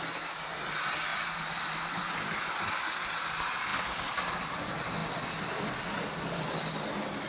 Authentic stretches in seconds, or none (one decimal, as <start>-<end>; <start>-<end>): 0.0-1.1; 2.5-7.3